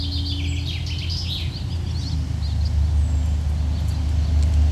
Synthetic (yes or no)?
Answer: no